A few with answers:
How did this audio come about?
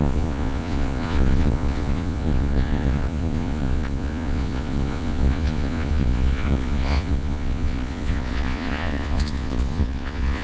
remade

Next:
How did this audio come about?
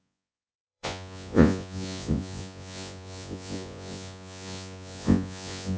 remade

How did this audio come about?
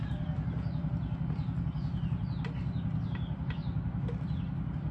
recorded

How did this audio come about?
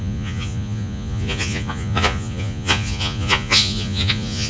remade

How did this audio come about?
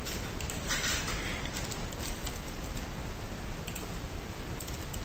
recorded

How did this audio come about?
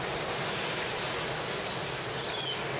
recorded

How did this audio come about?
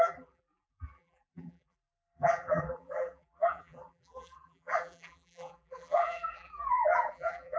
remade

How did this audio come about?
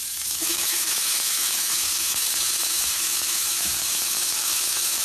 remade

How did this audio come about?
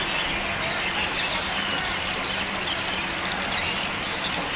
recorded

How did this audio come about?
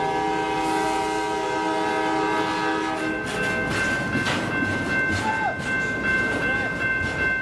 recorded